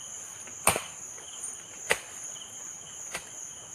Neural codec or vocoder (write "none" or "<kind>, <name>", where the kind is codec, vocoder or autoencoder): none